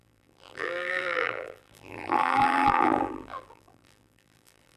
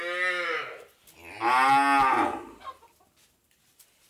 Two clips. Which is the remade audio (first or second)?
first